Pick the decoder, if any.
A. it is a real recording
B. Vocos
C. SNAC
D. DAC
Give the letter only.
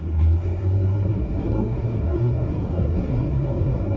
C